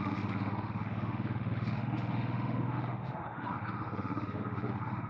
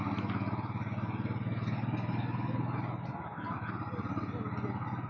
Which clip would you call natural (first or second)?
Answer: second